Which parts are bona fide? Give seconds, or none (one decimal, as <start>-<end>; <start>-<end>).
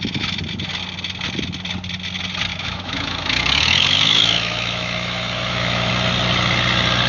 0.0-2.5; 5.9-7.1